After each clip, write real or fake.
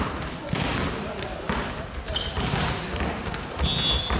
real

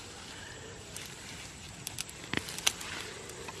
real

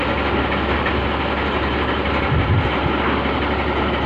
real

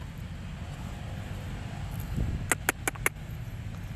real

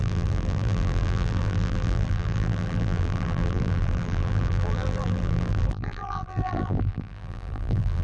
fake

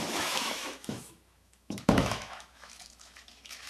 fake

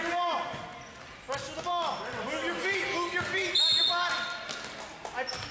real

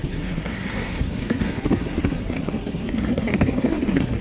fake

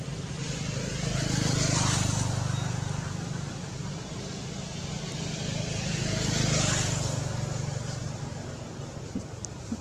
real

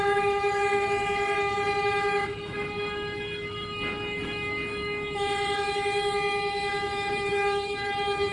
fake